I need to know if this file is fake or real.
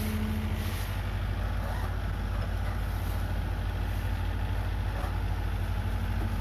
real